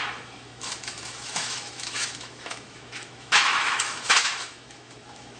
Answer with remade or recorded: remade